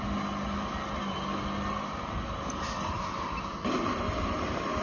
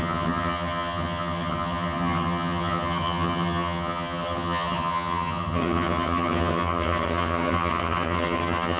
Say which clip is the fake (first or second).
second